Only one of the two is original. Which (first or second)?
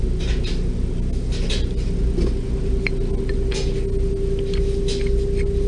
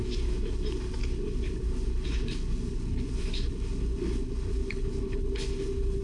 first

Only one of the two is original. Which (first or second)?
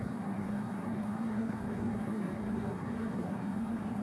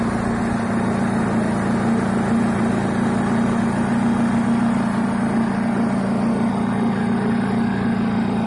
second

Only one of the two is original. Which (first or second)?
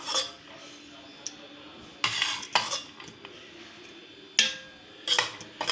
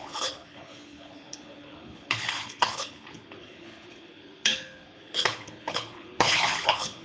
first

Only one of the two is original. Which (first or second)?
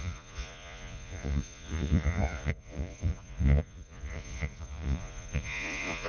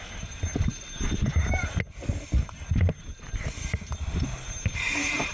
second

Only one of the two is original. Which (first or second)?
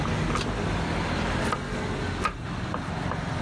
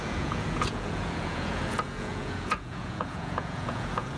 first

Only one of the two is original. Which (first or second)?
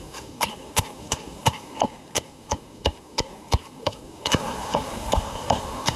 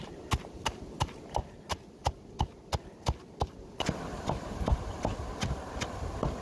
second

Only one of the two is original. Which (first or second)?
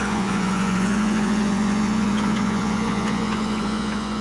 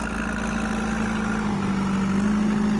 second